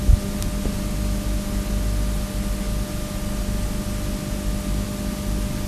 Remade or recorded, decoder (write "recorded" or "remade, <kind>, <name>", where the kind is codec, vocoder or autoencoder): recorded